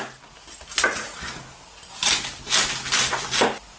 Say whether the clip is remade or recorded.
recorded